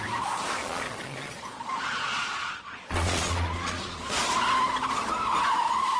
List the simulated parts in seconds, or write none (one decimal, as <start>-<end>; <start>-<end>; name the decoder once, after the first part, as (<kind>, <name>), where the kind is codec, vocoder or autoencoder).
0.6-4.2 (vocoder, Vocos)

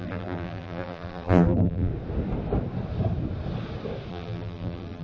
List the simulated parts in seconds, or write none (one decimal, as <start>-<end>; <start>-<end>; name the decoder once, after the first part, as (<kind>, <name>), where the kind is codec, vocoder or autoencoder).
0.0-1.9 (vocoder, BigVGAN v2); 4.1-5.0

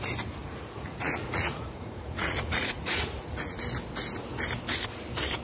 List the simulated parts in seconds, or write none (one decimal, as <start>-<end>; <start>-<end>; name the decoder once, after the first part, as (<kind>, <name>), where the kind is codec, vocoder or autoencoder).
0.4-3.6 (vocoder, Vocos)

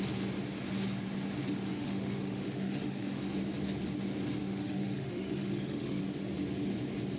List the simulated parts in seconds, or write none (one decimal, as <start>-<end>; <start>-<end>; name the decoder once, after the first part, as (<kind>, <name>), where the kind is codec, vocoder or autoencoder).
1.7-3.2 (autoencoder, DAC-VAE); 4.4-6.0

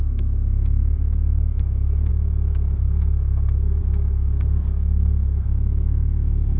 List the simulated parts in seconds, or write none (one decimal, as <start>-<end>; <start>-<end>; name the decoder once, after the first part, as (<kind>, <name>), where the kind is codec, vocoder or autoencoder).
0.0-6.6 (codec, SNAC)

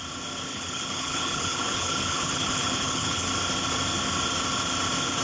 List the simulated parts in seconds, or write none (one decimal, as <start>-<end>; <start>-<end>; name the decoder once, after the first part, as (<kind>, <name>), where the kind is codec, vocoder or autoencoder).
0.5-3.3 (codec, HILCodec)

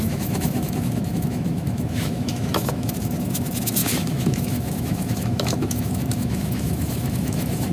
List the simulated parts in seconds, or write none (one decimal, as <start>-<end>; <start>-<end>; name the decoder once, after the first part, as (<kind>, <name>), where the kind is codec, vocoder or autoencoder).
0.0-7.7 (autoencoder, DAC-VAE)

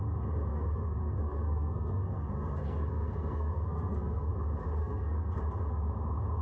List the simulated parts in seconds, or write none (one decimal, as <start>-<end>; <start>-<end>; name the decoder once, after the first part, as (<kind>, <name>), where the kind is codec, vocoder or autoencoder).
0.5-4.3 (codec, SNAC); 4.8-5.4